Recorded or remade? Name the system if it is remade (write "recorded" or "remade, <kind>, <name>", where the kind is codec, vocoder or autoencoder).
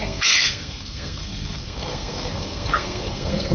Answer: remade, codec, SNAC